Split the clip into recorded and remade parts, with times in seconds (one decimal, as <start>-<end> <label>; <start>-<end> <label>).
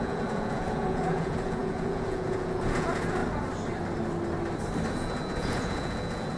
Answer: 0.0-3.2 remade; 3.2-4.9 recorded; 4.9-6.4 remade